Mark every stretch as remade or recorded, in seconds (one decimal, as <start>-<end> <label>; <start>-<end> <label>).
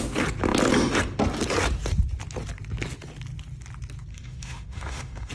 0.0-4.1 recorded; 4.1-5.3 remade